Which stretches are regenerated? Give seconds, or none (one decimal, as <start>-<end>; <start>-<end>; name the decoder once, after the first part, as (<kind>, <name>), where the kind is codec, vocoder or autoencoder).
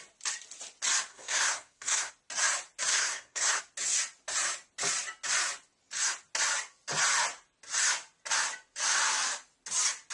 1.1-2.1 (codec, SNAC); 2.9-3.6